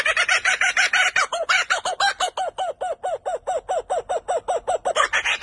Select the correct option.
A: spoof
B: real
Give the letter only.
B